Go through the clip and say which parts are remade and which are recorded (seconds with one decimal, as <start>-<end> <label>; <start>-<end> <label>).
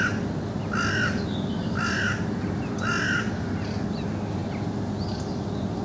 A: 0.0-5.8 recorded